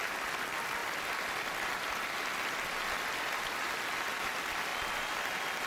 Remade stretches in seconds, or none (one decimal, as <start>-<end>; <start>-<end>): none